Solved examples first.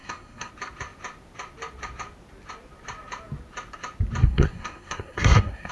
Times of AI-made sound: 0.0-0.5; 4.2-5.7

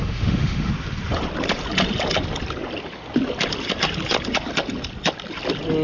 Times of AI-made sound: 0.0-0.7

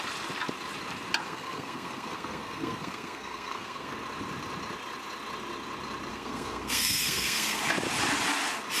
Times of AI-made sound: 1.2-3.9; 6.1-7.6

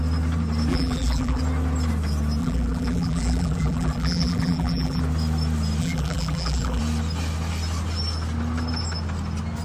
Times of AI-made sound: 0.7-1.4; 2.4-5.0; 5.8-6.8